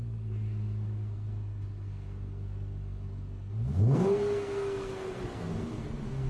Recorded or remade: remade